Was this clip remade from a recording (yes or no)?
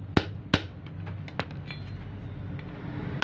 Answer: no